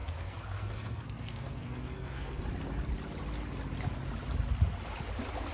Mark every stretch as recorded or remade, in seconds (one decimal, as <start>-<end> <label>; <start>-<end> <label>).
0.0-2.4 remade; 2.4-5.5 recorded